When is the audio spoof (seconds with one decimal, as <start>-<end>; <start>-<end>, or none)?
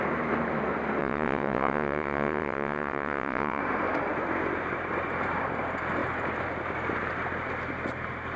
1.0-3.6